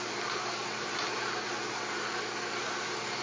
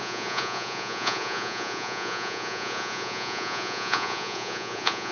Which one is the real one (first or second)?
first